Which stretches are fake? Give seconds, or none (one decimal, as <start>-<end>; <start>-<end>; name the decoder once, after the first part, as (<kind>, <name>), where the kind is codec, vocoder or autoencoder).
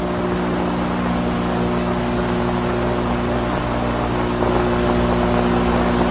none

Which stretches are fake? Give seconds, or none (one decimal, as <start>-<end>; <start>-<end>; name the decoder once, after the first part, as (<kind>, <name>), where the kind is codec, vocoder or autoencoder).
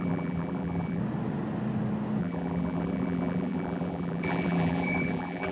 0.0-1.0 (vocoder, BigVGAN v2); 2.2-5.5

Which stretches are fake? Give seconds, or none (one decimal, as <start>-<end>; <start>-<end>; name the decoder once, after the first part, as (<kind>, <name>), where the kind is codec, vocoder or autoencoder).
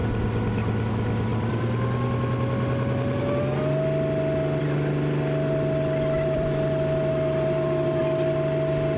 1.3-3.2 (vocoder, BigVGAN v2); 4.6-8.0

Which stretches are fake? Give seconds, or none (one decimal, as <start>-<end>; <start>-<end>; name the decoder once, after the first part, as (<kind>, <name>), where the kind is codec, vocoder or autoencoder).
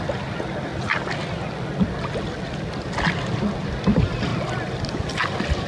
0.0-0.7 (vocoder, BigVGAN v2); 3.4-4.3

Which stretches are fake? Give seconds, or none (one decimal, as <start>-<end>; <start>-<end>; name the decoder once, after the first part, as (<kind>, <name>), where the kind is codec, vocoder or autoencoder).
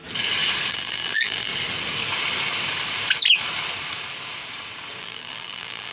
0.7-1.5 (vocoder, BigVGAN v2); 5.0-5.9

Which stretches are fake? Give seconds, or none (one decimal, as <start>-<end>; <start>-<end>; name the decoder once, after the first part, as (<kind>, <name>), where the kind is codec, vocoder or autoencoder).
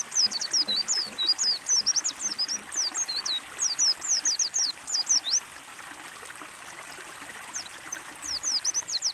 none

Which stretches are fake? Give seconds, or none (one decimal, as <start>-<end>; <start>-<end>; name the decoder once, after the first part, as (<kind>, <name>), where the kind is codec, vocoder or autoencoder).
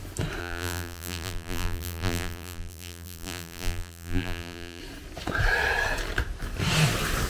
0.4-4.8 (vocoder, BigVGAN v2)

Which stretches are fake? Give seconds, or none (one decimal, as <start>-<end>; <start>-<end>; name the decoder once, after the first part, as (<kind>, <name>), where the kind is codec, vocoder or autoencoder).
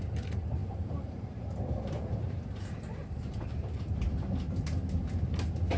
0.6-4.0 (vocoder, BigVGAN v2)